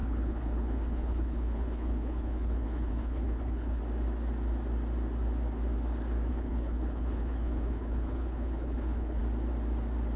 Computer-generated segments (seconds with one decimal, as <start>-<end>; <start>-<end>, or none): 0.0-3.8; 6.3-9.2